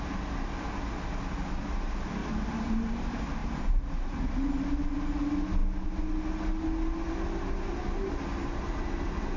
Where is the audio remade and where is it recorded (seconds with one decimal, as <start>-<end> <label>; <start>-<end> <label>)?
0.0-2.2 recorded; 2.2-2.9 remade; 2.9-3.4 recorded; 3.4-4.5 remade; 4.5-9.4 recorded